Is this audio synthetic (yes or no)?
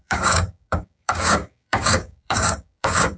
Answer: yes